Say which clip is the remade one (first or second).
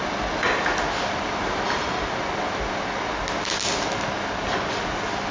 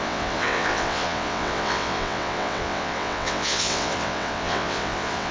second